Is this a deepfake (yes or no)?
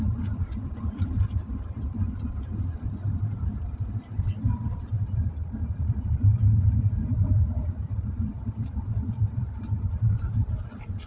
yes